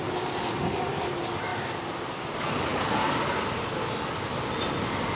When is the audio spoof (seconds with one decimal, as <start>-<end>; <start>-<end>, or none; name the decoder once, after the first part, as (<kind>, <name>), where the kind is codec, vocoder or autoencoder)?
none